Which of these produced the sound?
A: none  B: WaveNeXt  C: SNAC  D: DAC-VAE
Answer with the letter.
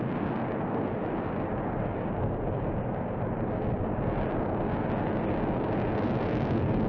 A